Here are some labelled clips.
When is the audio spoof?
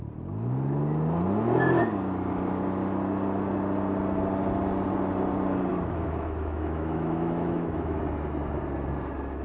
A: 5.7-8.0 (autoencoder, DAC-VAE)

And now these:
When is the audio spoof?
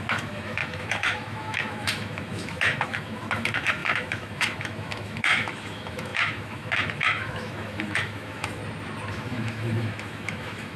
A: 0.0-8.6 (autoencoder, DAC-VAE); 9.1-10.8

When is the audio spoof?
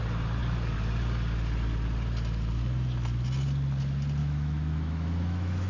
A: 4.2-5.7 (autoencoder, DAC-VAE)